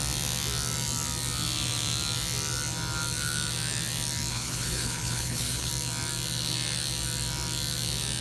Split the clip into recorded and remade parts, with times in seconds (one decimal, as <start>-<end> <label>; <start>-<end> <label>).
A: 0.0-4.3 recorded; 4.3-5.7 remade; 5.7-8.2 recorded